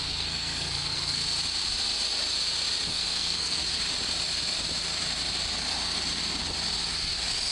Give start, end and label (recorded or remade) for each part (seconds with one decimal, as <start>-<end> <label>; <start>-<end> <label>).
0.0-1.2 remade; 1.2-2.9 recorded; 2.9-3.6 remade; 3.6-7.5 recorded